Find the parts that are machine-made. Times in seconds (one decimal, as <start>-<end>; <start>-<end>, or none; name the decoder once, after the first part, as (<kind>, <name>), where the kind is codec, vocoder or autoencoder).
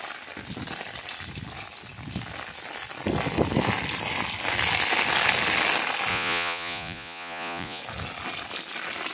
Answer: 6.1-7.8 (vocoder, Vocos)